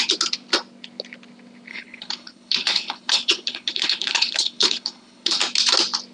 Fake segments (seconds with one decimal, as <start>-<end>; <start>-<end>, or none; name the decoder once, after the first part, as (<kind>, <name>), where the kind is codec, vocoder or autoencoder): 1.7-5.4 (codec, HILCodec)